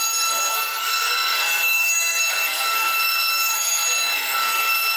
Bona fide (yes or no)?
no